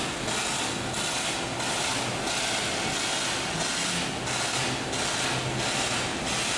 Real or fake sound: real